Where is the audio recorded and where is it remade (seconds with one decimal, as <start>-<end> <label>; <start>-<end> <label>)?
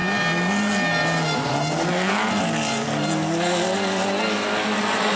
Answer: 0.0-5.2 recorded